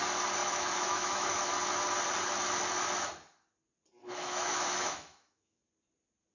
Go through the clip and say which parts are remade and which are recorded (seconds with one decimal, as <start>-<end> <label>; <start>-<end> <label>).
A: 0.0-0.4 recorded; 0.4-1.5 remade; 1.5-4.0 recorded; 4.0-5.6 remade; 5.6-6.3 recorded